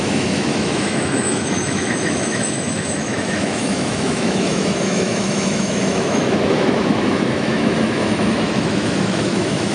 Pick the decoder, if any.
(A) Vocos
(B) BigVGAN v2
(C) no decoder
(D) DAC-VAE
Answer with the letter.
D